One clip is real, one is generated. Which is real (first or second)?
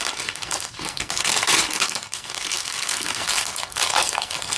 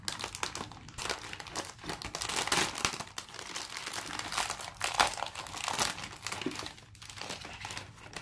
second